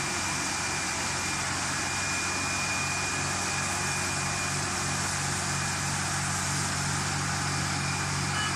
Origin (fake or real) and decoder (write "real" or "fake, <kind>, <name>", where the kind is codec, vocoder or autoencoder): real